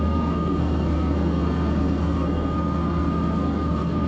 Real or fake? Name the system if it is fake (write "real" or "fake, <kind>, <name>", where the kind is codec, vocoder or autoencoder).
fake, codec, SNAC